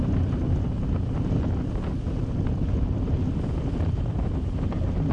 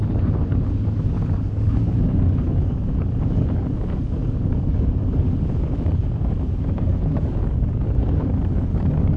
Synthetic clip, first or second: second